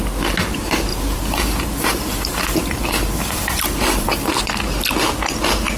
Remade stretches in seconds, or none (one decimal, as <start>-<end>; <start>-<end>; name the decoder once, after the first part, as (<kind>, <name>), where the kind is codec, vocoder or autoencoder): 0.9-4.4 (vocoder, BigVGAN v2)

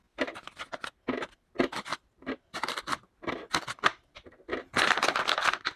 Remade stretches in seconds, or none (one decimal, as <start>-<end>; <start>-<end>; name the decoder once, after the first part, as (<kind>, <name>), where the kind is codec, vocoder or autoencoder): 1.9-3.3 (vocoder, BigVGAN v2); 3.9-5.8

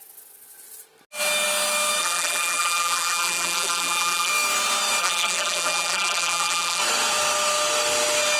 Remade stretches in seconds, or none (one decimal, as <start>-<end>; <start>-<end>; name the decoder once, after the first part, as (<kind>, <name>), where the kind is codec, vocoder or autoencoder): 2.0-4.3 (vocoder, BigVGAN v2); 5.0-6.8

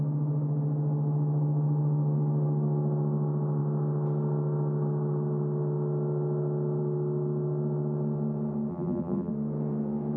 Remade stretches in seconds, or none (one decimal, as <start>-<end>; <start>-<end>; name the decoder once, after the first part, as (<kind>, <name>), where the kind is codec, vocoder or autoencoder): 8.7-9.3 (vocoder, BigVGAN v2)

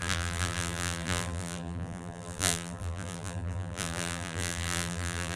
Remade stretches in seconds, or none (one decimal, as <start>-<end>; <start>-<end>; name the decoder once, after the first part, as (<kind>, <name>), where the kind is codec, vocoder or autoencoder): 0.0-5.4 (vocoder, BigVGAN v2)

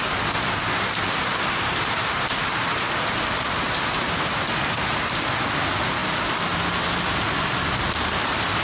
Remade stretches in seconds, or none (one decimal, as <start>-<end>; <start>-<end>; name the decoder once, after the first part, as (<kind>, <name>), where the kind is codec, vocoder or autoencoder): 1.3-5.3 (vocoder, BigVGAN v2)

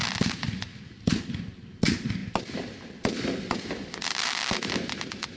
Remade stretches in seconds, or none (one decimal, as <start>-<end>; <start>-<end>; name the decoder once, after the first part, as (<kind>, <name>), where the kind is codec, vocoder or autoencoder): 0.7-2.2 (vocoder, BigVGAN v2); 3.7-5.4